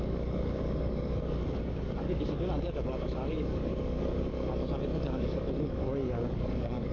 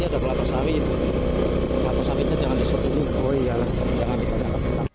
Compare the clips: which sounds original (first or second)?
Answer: second